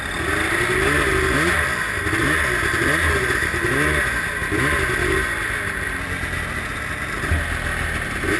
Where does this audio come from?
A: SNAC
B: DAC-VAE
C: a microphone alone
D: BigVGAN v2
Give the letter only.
C